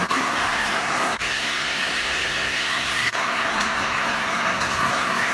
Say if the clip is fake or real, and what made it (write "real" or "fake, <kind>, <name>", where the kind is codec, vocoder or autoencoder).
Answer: fake, codec, SNAC